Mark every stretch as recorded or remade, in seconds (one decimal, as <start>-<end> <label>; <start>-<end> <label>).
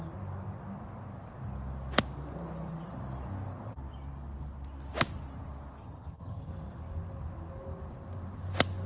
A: 0.0-5.8 recorded; 5.8-6.5 remade; 6.5-8.9 recorded